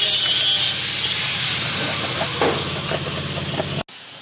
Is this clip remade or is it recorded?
recorded